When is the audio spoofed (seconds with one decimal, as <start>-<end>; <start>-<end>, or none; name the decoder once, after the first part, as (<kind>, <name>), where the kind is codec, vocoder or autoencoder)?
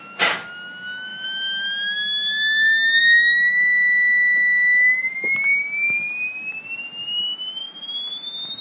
none